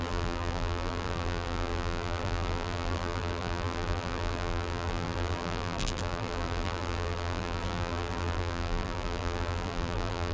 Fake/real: fake